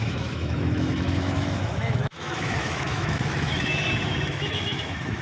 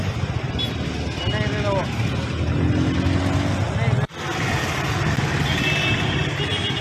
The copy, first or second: first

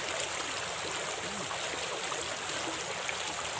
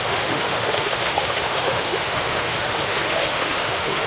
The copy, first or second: second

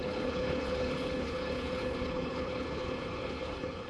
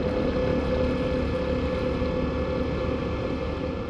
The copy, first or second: first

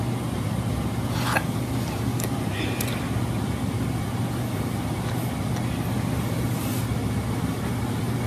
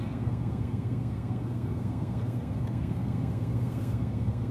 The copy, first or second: second